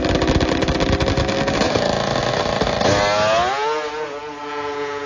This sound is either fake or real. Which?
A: real